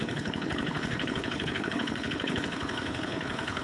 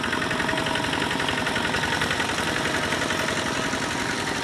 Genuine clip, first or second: second